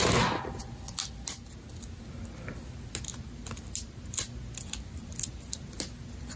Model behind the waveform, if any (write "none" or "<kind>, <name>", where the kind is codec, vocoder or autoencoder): none